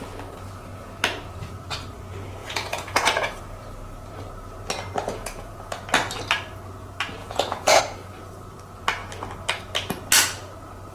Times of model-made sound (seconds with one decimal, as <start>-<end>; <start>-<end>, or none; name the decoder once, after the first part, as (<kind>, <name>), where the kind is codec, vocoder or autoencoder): 2.4-3.4 (vocoder, Vocos); 5.0-5.8; 7.2-7.8